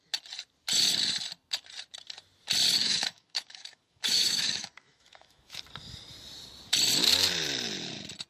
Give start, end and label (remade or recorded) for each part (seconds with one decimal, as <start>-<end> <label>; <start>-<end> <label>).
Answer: 0.0-2.8 recorded; 2.8-5.6 remade; 5.6-8.3 recorded